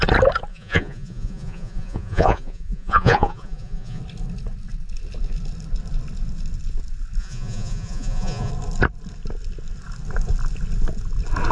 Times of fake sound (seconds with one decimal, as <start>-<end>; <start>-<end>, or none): 0.5-4.0; 7.2-8.5